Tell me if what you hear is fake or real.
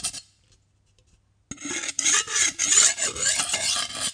real